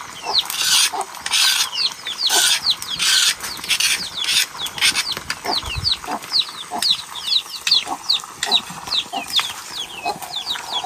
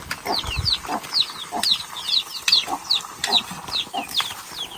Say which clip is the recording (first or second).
first